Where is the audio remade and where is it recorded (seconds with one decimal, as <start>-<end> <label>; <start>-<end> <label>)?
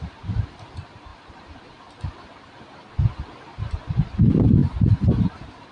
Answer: 0.0-1.1 remade; 1.1-3.6 recorded; 3.6-5.7 remade